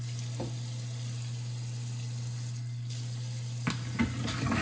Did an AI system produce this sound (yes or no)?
no